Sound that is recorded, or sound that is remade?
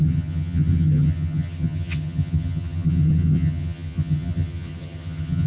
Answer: remade